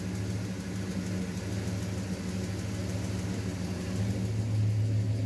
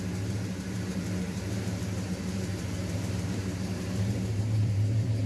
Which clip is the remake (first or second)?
second